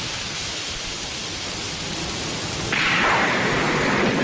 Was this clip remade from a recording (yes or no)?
yes